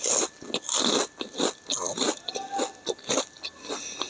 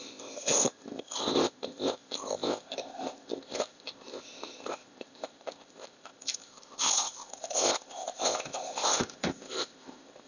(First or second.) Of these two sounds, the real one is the first